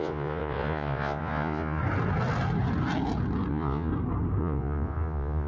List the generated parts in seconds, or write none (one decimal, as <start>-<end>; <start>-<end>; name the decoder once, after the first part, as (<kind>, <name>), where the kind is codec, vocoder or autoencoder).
0.0-1.8 (vocoder, Vocos); 3.5-3.9; 4.4-5.5